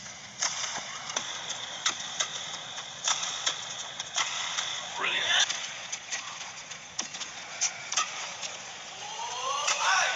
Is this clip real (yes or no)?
no